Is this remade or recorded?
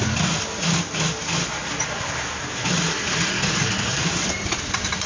remade